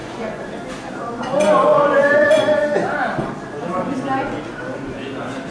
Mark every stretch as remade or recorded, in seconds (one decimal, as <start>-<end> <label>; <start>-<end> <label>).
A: 0.0-0.5 remade; 0.5-1.7 recorded; 1.7-2.3 remade; 2.3-5.5 recorded